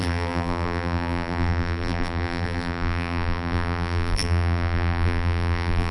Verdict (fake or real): fake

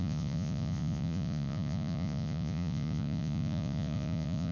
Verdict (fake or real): fake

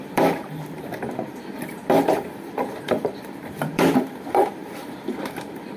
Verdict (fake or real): fake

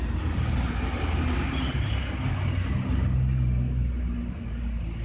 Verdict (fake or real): real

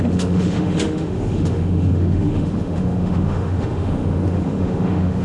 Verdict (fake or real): fake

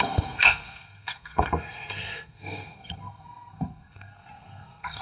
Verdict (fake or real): fake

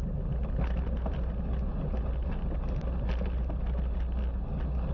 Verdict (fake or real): real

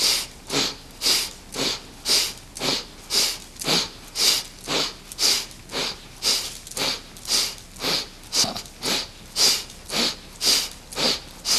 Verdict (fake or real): real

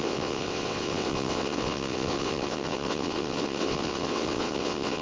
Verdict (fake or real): fake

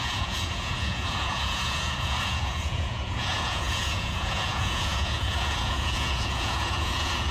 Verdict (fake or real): fake